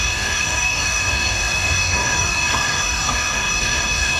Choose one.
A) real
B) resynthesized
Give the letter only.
B